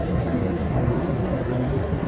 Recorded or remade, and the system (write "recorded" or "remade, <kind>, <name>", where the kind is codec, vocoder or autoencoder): remade, codec, SNAC